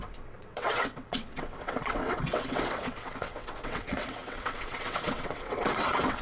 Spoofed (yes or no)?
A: yes